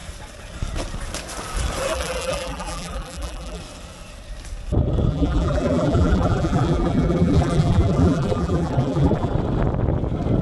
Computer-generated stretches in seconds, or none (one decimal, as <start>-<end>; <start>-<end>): 1.9-3.6; 5.1-9.3